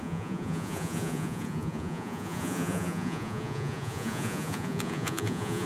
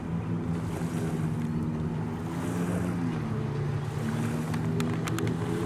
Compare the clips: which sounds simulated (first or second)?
first